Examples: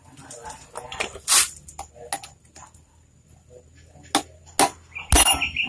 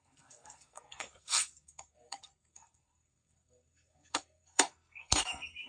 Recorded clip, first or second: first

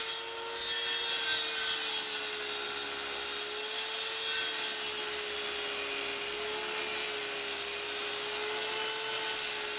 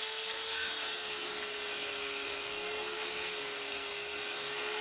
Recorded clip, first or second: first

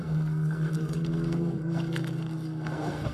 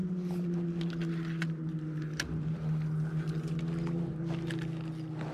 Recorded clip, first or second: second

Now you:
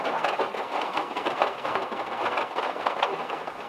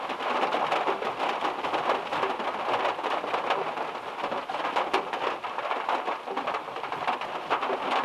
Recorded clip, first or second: second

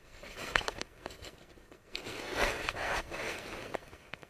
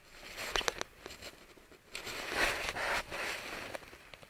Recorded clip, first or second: second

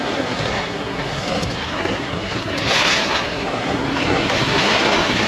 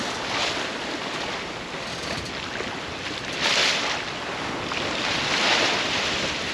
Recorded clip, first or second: second